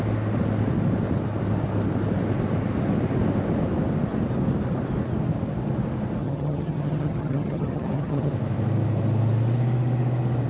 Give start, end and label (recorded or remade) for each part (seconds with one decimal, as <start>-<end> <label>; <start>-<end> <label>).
0.0-6.2 recorded; 6.2-8.3 remade; 8.3-10.5 recorded